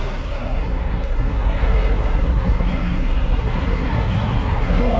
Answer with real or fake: fake